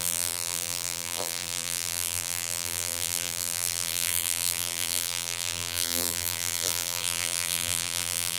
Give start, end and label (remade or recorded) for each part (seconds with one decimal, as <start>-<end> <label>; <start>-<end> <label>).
0.0-8.4 remade